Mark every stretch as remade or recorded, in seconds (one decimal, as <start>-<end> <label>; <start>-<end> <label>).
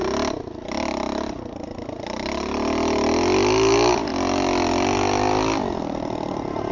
0.0-6.7 recorded